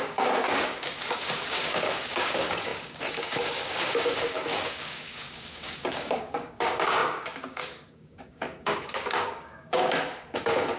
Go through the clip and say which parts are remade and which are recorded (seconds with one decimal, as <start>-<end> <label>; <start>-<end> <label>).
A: 0.0-10.8 remade